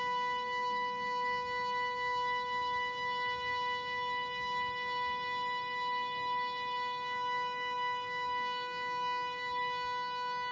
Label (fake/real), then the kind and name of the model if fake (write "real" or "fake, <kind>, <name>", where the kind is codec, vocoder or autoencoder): fake, codec, DAC